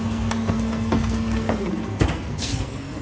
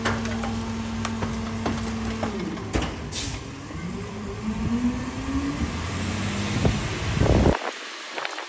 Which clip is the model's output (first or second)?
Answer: first